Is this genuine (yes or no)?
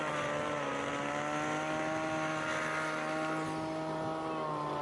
yes